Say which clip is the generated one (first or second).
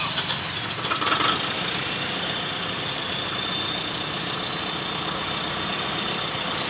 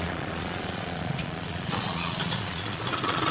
second